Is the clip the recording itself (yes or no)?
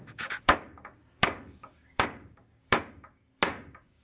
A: no